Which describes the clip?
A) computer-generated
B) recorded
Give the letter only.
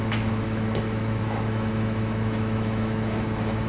A